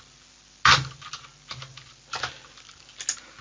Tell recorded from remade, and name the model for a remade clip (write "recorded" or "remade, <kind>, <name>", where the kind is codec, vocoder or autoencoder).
recorded